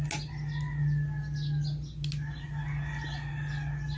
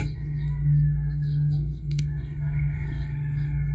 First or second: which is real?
first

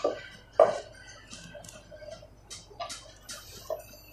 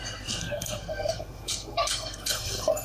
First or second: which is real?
first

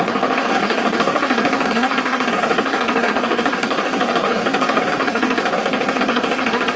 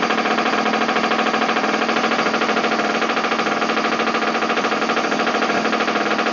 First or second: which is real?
second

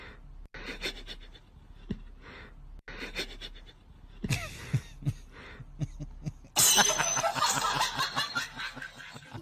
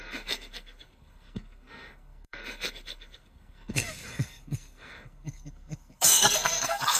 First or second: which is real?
first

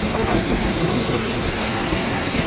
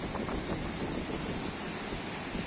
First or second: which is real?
second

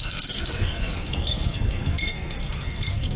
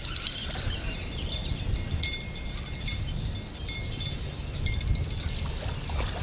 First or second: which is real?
second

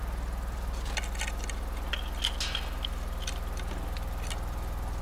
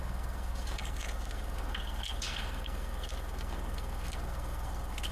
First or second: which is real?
first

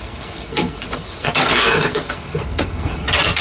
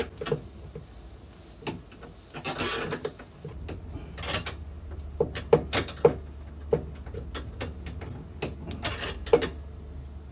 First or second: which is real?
second